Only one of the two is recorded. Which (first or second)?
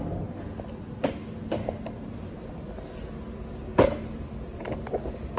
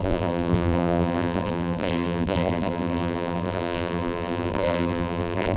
first